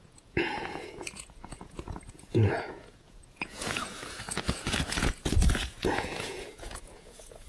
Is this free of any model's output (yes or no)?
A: no